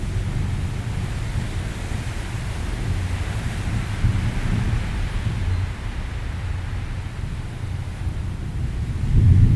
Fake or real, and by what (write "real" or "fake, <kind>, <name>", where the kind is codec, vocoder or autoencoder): real